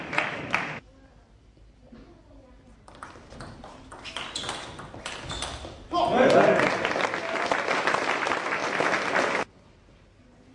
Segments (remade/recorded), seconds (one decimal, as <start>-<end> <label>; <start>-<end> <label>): 0.0-10.5 recorded